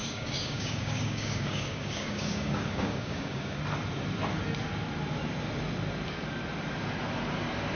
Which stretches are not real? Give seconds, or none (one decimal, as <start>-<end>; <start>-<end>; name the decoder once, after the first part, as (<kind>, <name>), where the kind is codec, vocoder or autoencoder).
0.0-3.6 (codec, DAC)